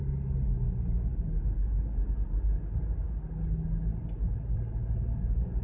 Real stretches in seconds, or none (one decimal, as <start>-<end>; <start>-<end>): 0.0-5.6